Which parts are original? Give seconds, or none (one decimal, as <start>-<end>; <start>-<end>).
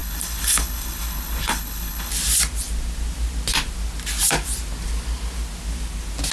2.1-6.3